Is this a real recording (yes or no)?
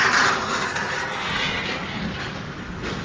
yes